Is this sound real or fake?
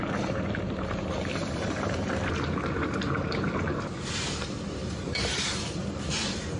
fake